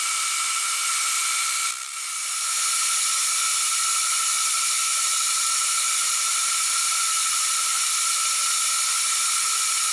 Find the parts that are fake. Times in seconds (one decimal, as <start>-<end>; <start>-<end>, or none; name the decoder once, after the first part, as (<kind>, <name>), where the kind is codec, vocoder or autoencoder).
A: 1.2-2.2 (vocoder, BigVGAN v2); 4.4-8.5